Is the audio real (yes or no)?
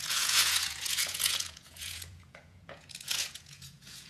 no